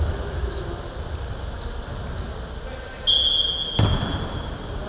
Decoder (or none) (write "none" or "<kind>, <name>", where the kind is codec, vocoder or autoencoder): none